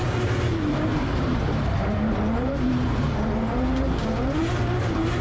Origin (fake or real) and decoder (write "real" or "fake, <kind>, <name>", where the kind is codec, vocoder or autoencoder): fake, vocoder, BigVGAN v2